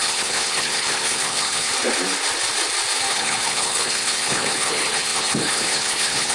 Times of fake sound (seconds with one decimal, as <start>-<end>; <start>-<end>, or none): 0.0-1.7; 3.1-6.3